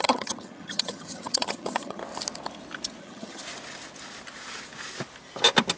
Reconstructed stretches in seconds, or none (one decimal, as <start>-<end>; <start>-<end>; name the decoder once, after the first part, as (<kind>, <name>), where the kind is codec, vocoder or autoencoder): 0.0-2.0 (vocoder, HiFi-GAN); 3.0-3.4